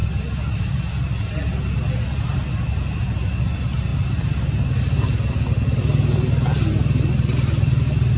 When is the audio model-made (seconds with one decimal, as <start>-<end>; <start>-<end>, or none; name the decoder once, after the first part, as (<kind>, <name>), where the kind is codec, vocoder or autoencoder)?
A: none